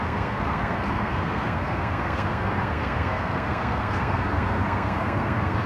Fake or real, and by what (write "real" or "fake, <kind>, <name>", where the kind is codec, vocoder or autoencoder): fake, codec, SNAC